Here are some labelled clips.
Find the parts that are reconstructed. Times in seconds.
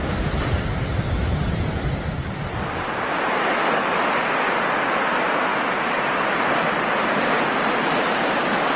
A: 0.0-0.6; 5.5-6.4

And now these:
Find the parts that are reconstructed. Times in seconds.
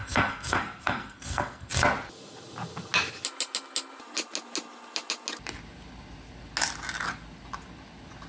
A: 0.0-1.7